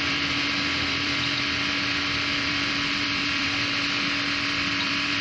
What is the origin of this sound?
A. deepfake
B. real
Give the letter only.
A